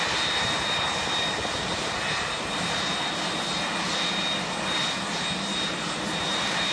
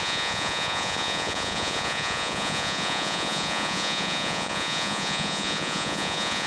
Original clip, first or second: first